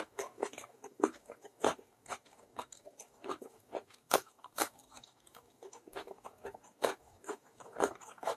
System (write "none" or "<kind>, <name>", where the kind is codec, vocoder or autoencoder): codec, DAC